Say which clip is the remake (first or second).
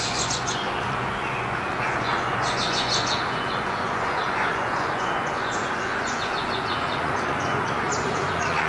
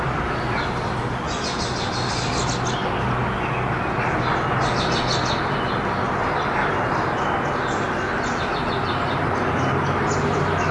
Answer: first